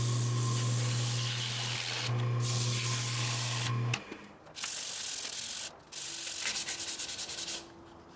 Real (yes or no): yes